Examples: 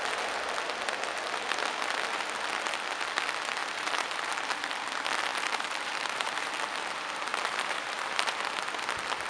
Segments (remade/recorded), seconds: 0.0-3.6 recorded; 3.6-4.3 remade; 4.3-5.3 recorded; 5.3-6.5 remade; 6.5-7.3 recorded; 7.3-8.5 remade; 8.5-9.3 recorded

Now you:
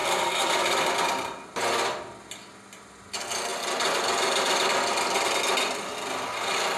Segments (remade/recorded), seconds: 0.0-0.9 remade; 0.9-3.5 recorded; 3.5-5.4 remade; 5.4-6.8 recorded

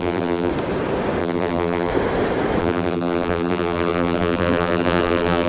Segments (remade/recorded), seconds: 0.0-0.5 remade; 0.5-1.2 recorded; 1.2-1.9 remade; 1.9-2.6 recorded; 2.6-5.5 remade

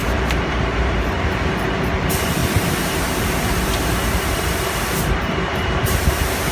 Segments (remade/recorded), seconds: 0.0-1.6 remade; 1.6-2.4 recorded; 2.4-6.5 remade

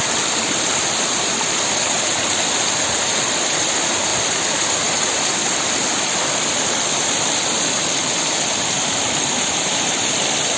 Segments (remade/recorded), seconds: 0.0-10.6 remade

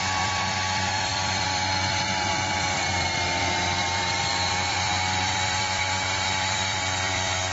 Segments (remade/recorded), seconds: 0.0-7.5 remade

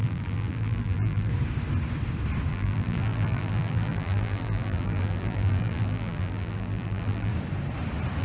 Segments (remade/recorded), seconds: 0.0-1.3 remade; 1.3-2.5 recorded; 2.5-7.3 remade; 7.3-8.2 recorded